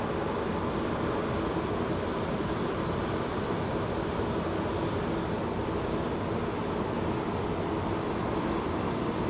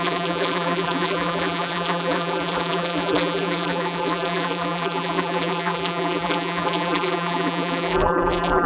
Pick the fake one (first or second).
second